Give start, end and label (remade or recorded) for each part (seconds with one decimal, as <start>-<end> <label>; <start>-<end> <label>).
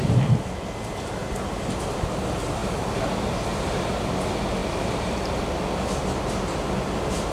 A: 0.0-2.6 recorded; 2.6-3.1 remade; 3.1-4.6 recorded; 4.6-5.6 remade; 5.6-7.3 recorded